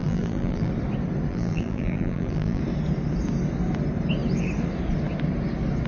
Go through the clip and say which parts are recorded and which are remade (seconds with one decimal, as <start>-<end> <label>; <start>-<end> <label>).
0.0-0.7 remade; 0.7-1.3 recorded; 1.3-2.6 remade; 2.6-5.9 recorded